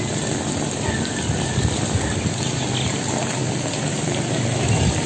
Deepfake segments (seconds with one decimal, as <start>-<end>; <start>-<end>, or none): 0.0-5.1